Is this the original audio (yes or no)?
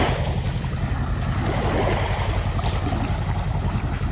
yes